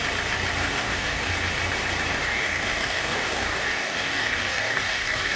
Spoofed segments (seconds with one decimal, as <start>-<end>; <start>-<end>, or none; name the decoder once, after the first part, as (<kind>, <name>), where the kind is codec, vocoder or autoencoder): 0.6-1.3 (codec, DAC); 2.1-5.4